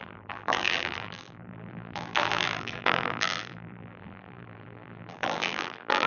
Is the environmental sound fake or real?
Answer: fake